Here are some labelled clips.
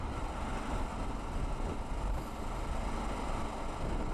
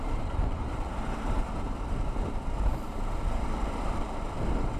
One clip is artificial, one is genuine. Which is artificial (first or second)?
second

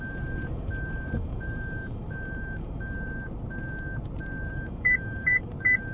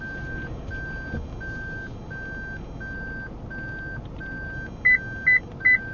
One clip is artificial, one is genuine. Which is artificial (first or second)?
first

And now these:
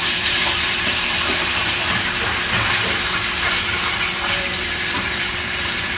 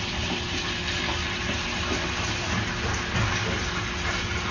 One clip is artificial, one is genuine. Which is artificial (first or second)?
first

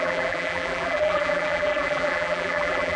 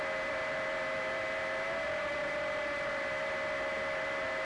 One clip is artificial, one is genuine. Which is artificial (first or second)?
first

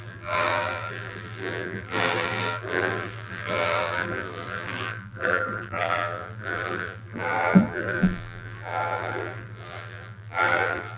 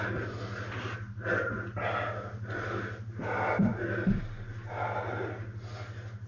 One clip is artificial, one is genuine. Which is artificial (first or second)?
first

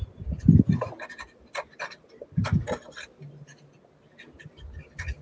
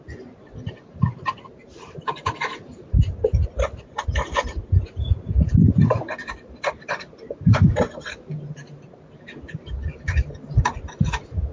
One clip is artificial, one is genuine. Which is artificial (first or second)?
second